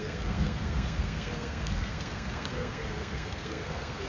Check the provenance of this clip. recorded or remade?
remade